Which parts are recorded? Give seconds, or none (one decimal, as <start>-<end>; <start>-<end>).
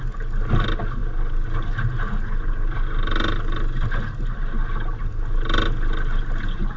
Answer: 0.0-6.8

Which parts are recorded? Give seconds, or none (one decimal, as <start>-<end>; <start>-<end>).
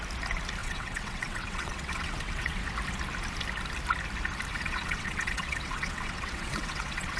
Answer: 0.0-0.6; 2.6-4.5